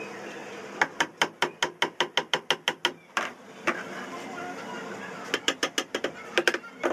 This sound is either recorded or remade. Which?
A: recorded